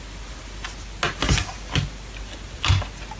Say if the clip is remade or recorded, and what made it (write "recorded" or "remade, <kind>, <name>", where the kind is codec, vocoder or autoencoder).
recorded